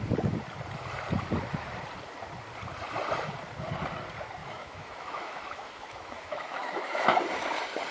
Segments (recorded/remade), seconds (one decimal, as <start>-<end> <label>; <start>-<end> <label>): 0.0-4.4 recorded; 4.4-7.2 remade; 7.2-7.9 recorded